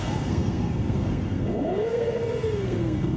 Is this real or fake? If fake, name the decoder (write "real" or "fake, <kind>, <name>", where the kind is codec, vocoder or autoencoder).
fake, codec, SNAC